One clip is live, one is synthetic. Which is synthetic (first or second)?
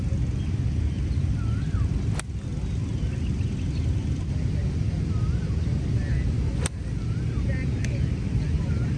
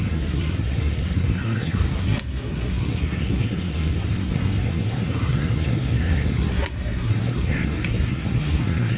second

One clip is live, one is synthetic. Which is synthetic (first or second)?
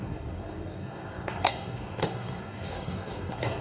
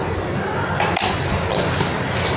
first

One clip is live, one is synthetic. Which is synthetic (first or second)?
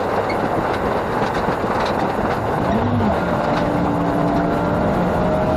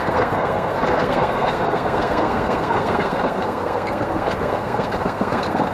second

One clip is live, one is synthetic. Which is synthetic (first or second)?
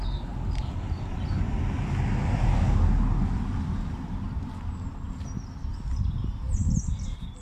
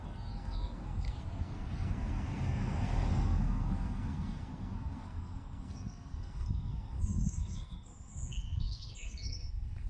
second